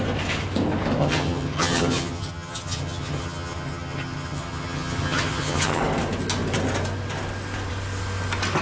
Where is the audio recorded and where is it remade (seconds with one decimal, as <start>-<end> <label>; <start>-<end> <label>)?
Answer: 0.0-1.0 recorded; 1.0-5.8 remade; 5.8-8.6 recorded